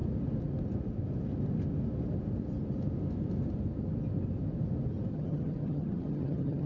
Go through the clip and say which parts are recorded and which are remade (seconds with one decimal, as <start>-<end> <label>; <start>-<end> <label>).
0.0-5.1 recorded; 5.1-6.7 remade